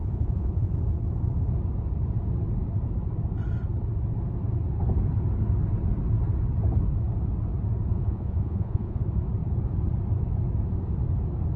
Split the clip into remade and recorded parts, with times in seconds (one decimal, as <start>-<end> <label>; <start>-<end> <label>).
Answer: 0.0-0.7 remade; 0.7-7.9 recorded; 7.9-9.0 remade; 9.0-11.6 recorded